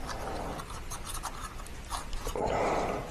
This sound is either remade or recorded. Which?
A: recorded